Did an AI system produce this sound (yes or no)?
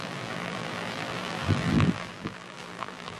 yes